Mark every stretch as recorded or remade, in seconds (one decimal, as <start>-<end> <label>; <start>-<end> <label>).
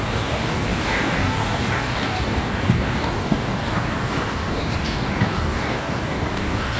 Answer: 0.0-6.8 remade